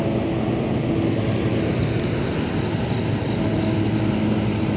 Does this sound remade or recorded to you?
recorded